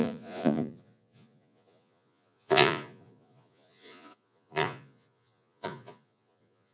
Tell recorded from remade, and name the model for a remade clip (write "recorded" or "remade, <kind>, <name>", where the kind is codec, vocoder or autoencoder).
remade, vocoder, Vocos